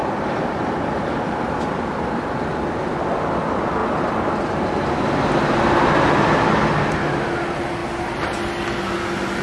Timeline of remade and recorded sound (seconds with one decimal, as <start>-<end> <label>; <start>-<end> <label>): 0.0-9.4 recorded